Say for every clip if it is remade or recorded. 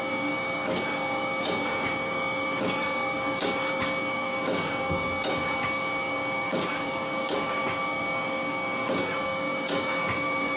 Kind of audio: remade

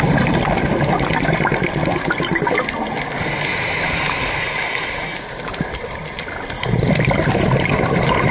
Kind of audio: recorded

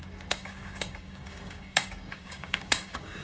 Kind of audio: remade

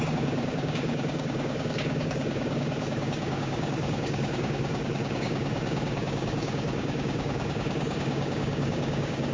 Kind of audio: remade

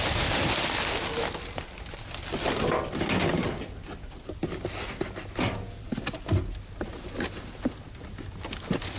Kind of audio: recorded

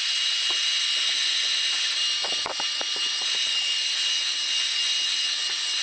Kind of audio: recorded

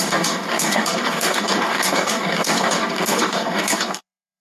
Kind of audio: remade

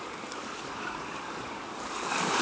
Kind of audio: remade